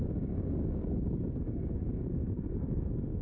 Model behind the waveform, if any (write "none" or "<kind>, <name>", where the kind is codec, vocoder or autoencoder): codec, DAC